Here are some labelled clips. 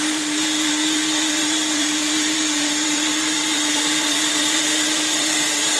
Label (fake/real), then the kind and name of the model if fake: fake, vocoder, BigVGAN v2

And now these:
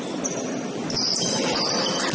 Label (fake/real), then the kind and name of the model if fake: real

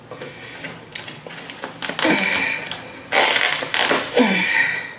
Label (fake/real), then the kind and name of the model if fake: real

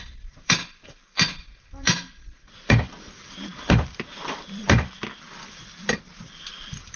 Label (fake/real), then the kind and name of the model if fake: fake, vocoder, BigVGAN v2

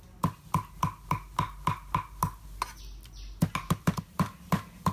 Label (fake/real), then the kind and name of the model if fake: real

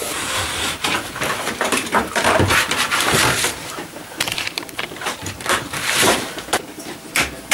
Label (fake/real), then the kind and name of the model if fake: fake, vocoder, BigVGAN v2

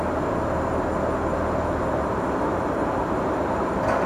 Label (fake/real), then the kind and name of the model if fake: real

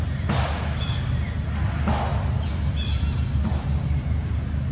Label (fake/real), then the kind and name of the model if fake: real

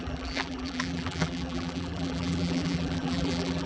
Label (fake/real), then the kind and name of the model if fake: fake, vocoder, BigVGAN v2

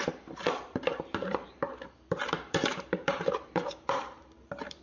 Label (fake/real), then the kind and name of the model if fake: fake, vocoder, BigVGAN v2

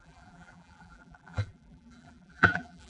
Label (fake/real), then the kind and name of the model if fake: fake, vocoder, BigVGAN v2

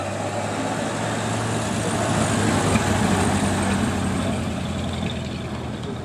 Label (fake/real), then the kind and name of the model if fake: real